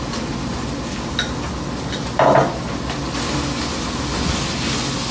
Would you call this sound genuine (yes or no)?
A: yes